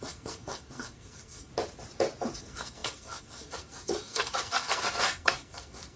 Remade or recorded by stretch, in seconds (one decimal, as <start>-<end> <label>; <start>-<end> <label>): 0.0-1.5 remade; 1.5-2.4 recorded; 2.4-6.0 remade